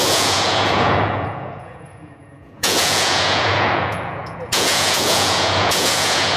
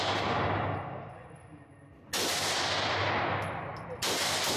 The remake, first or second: first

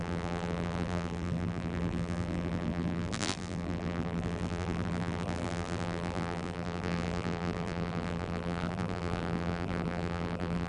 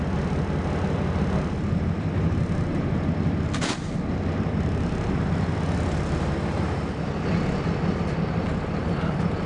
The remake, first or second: first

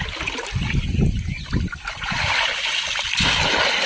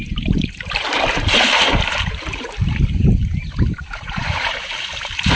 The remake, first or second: second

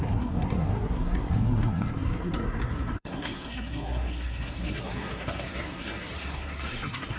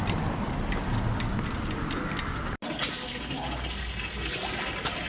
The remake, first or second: first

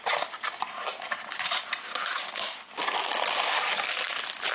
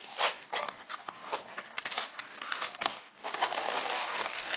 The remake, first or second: second